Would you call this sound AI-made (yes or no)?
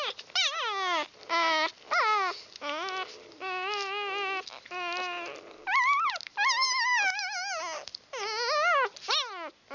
no